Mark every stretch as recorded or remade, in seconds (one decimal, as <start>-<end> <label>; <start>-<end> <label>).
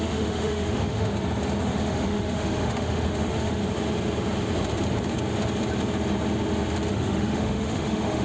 0.0-1.1 remade; 1.1-1.6 recorded; 1.6-3.6 remade; 3.6-6.9 recorded; 6.9-8.2 remade